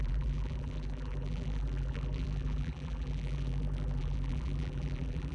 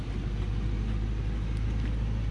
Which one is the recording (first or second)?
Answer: second